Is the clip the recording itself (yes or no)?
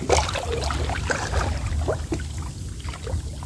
yes